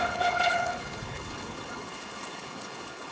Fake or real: fake